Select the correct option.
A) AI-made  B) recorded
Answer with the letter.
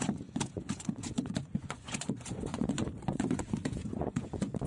A